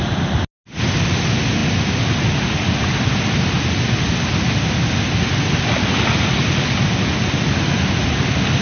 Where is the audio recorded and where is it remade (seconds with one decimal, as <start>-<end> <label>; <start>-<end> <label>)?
0.0-8.6 recorded